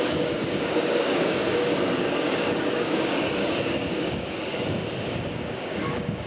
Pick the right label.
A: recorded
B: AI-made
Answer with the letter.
B